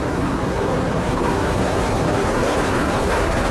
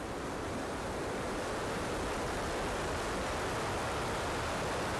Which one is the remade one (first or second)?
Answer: first